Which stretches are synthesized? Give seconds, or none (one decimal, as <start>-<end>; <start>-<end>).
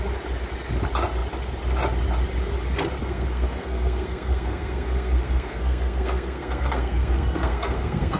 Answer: 3.0-8.2